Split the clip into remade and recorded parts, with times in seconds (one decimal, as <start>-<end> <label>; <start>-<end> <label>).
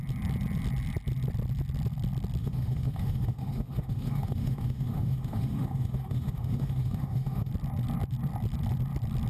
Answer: 0.0-2.4 recorded; 2.4-7.5 remade; 7.5-9.3 recorded